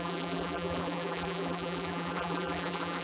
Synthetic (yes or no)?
yes